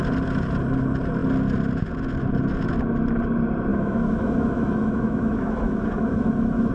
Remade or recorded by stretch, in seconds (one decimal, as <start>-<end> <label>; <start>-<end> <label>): 0.0-3.7 recorded; 3.7-6.7 remade